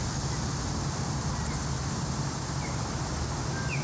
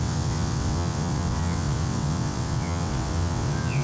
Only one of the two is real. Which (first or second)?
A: first